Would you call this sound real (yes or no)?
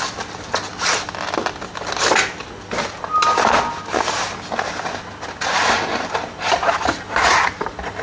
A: yes